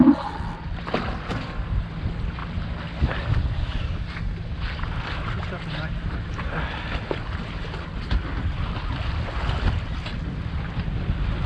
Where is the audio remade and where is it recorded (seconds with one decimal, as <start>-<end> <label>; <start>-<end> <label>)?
0.0-11.5 recorded

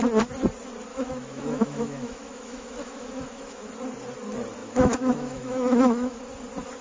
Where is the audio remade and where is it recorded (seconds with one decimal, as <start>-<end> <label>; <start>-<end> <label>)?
0.0-0.9 recorded; 0.9-3.7 remade; 3.7-4.6 recorded; 4.6-6.2 remade; 6.2-6.8 recorded

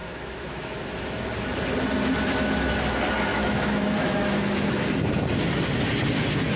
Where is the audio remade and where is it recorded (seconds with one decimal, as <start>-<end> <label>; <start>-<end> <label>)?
0.0-1.2 remade; 1.2-3.3 recorded; 3.3-4.9 remade; 4.9-6.6 recorded

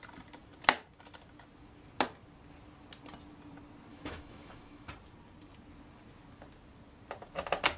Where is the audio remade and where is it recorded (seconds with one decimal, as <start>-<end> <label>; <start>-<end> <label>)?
0.0-3.9 recorded; 3.9-4.9 remade; 4.9-7.8 recorded

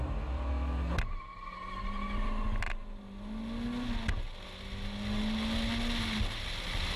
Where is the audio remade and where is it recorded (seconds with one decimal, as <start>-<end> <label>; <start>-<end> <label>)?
0.0-7.0 recorded